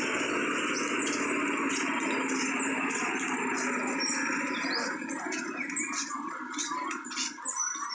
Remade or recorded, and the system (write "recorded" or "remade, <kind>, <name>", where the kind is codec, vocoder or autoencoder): recorded